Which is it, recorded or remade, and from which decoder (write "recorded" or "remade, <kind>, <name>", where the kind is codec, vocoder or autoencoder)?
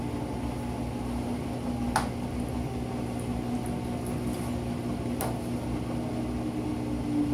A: recorded